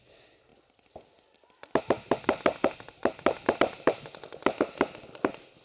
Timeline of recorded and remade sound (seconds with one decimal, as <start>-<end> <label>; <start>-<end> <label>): 0.0-5.6 recorded